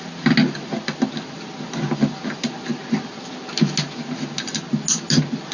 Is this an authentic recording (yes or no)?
yes